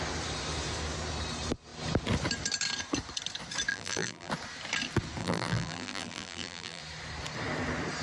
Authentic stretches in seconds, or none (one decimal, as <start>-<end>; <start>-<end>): 0.0-3.7; 4.3-5.2; 6.8-8.0